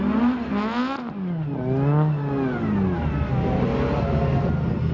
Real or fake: real